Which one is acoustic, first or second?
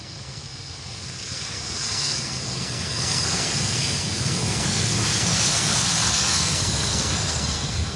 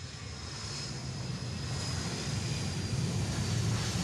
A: second